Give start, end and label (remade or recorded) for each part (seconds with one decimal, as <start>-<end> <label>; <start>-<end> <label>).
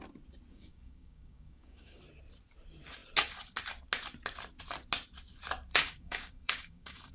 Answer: 0.0-0.5 recorded; 0.5-2.0 remade; 2.0-5.7 recorded; 5.7-7.1 remade